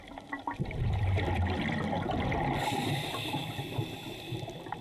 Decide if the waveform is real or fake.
real